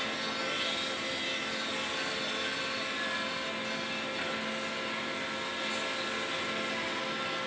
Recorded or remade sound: recorded